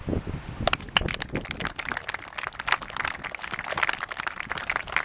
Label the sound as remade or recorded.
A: recorded